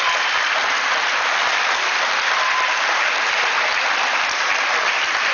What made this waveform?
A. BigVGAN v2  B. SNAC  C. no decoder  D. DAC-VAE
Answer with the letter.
A